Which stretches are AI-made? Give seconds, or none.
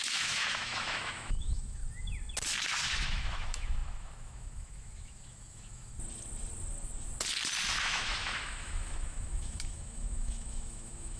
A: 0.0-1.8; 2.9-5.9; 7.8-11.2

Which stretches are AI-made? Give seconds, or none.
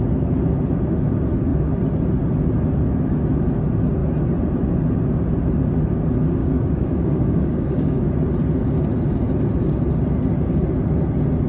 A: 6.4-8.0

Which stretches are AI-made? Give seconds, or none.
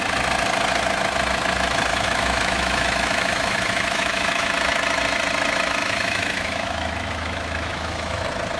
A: 1.9-4.5; 5.8-8.2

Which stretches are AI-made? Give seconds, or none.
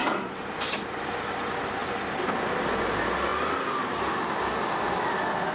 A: 0.0-0.9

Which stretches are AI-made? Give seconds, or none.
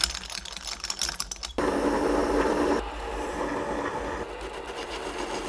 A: none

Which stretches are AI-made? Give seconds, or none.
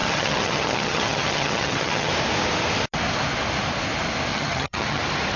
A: 0.0-2.1; 4.3-5.0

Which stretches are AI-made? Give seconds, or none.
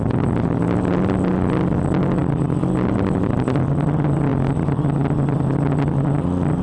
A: none